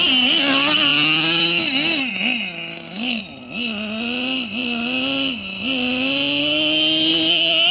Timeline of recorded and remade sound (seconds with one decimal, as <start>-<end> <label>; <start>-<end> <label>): 0.0-2.7 recorded; 2.7-3.2 remade; 3.2-7.7 recorded